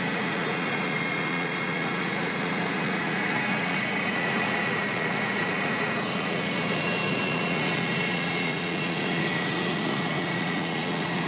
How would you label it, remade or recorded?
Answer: remade